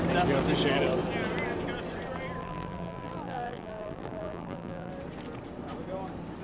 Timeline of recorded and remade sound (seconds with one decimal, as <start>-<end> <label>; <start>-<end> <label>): 0.0-2.4 recorded; 2.4-4.9 remade; 4.9-6.4 recorded